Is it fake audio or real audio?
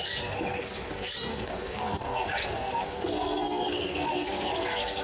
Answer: fake